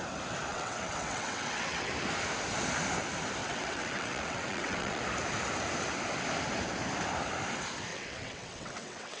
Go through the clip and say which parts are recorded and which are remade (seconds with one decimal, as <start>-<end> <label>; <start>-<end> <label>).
0.0-0.5 recorded; 0.5-1.9 remade; 1.9-3.4 recorded; 3.4-5.0 remade; 5.0-7.9 recorded; 7.9-9.2 remade